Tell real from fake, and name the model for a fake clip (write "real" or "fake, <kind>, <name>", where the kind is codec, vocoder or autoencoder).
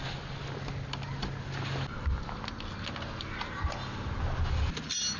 real